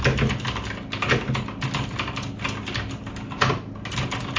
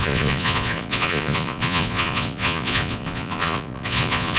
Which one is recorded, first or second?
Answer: first